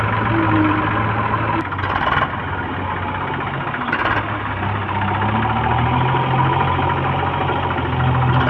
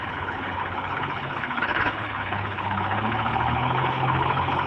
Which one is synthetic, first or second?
second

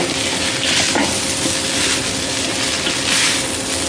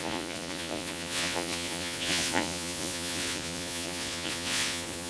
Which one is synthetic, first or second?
second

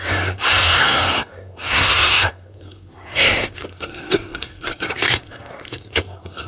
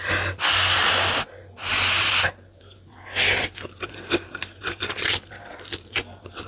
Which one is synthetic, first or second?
first